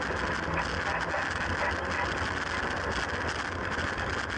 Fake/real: real